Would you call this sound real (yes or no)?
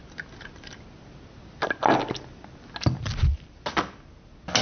yes